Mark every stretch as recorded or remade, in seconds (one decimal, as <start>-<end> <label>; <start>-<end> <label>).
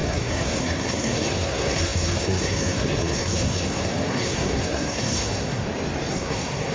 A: 0.0-5.6 remade; 5.6-6.1 recorded; 6.1-6.7 remade